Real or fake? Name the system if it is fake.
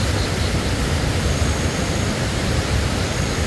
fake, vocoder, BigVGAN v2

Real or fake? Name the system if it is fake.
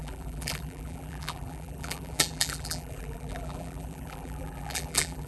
fake, vocoder, BigVGAN v2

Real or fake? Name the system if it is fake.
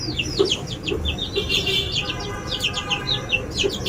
real